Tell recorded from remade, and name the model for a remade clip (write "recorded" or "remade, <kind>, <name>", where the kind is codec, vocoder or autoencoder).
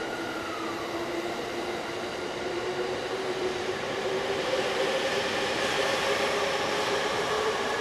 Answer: remade, vocoder, BigVGAN v2